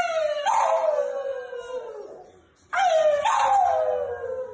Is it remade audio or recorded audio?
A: recorded